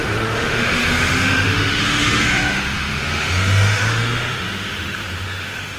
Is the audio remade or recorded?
remade